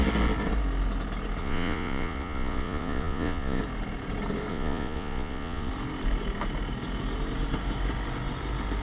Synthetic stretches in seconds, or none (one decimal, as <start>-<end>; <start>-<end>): 1.4-3.6; 4.5-5.7